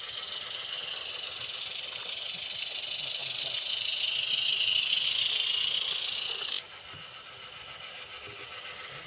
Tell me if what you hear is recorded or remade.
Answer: recorded